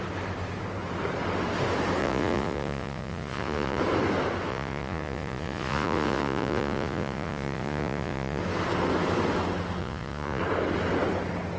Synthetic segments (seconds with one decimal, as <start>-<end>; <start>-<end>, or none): 2.0-3.8; 4.5-8.4; 9.8-10.4